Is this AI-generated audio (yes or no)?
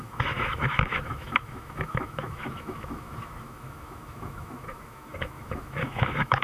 yes